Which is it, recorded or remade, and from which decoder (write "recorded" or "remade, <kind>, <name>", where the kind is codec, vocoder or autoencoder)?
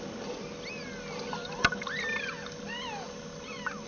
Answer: recorded